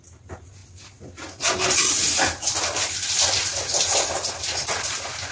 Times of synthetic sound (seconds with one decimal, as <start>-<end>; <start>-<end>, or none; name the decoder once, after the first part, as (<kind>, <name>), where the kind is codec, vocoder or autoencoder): none